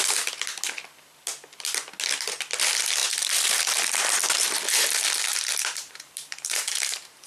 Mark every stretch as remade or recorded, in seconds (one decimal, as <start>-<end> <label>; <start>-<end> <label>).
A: 0.0-3.0 recorded; 3.0-3.6 remade; 3.6-5.3 recorded; 5.3-7.3 remade